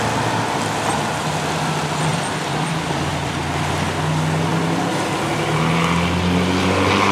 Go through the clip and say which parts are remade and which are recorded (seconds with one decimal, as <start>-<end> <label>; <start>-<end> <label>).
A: 0.0-2.1 recorded; 2.1-2.7 remade; 2.7-3.1 recorded; 3.1-3.7 remade; 3.7-7.1 recorded